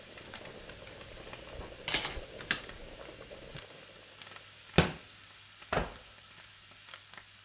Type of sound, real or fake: real